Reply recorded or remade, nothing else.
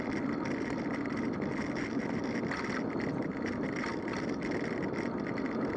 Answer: recorded